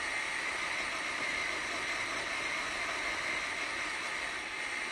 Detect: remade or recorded recorded